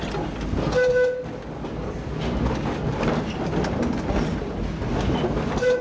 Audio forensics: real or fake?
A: real